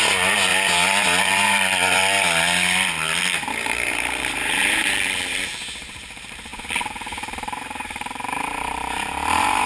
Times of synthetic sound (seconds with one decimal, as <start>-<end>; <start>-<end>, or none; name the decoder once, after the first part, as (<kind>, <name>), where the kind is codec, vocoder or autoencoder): 0.0-0.5 (vocoder, BigVGAN v2); 1.2-2.0; 3.5-9.7

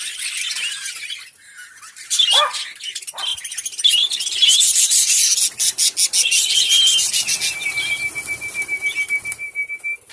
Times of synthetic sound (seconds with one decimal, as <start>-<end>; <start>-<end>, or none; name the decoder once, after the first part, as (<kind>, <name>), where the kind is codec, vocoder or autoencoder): none